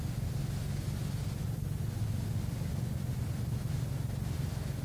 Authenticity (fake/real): real